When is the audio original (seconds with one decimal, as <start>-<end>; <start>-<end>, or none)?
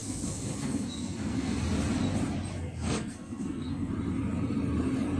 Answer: 1.6-2.5; 3.9-5.2